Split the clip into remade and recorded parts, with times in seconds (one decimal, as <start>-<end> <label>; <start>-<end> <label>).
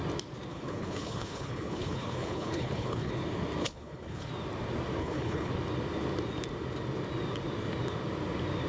0.0-0.5 recorded; 0.5-3.1 remade; 3.1-3.6 recorded; 3.6-4.3 remade; 4.3-5.0 recorded; 5.0-5.5 remade; 5.5-8.7 recorded